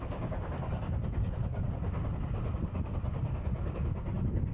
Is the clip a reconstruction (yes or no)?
no